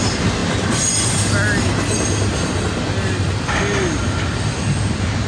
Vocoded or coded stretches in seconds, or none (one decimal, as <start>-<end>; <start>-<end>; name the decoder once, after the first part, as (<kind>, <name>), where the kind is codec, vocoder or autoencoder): none